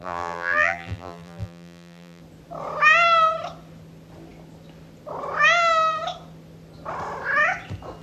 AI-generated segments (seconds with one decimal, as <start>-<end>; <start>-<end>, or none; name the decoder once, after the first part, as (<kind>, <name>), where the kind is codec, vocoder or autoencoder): 0.0-2.2 (vocoder, BigVGAN v2)